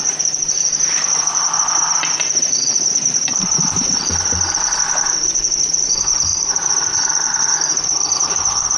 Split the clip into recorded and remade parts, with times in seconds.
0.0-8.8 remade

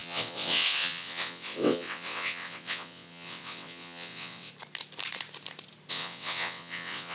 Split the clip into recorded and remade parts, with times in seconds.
0.0-4.5 remade; 4.5-5.9 recorded; 5.9-7.1 remade

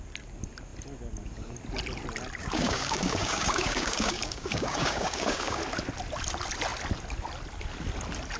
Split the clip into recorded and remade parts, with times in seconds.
0.0-2.4 recorded; 2.4-5.6 remade; 5.6-8.4 recorded

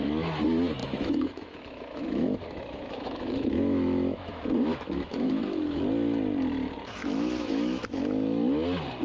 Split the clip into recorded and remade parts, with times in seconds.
0.0-0.8 recorded; 0.8-5.8 remade; 5.8-7.0 recorded; 7.0-8.0 remade; 8.0-9.0 recorded

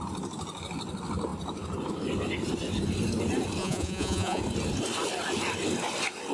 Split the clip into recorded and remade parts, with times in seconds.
0.0-3.6 recorded; 3.6-4.4 remade; 4.4-6.3 recorded

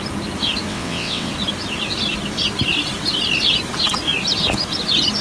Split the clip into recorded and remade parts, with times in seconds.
0.0-0.7 recorded; 0.7-1.3 remade; 1.3-5.2 recorded

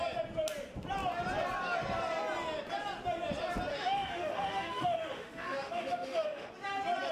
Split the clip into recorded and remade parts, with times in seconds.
0.0-3.7 recorded; 3.7-6.5 remade; 6.5-7.1 recorded

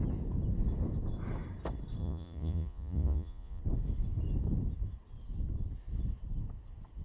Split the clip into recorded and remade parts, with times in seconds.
0.0-2.0 recorded; 2.0-3.6 remade; 3.6-7.0 recorded